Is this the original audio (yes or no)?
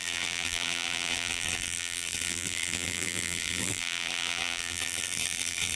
no